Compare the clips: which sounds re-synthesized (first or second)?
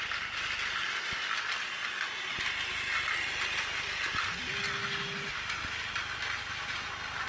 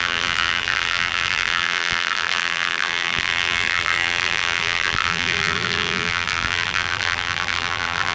second